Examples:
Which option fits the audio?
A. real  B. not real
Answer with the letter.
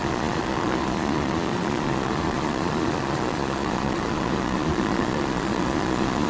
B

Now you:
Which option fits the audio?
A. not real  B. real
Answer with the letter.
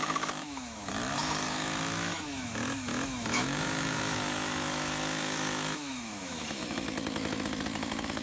A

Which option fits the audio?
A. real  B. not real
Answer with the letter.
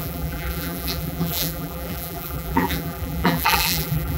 B